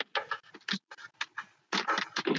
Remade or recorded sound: recorded